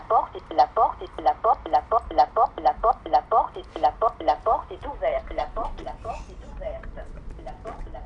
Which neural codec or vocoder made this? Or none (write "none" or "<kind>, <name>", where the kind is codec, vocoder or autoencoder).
none